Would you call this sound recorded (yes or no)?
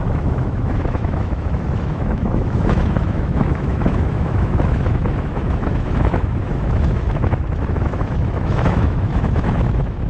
no